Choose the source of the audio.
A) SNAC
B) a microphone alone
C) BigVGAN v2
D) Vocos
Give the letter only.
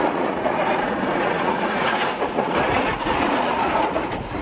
D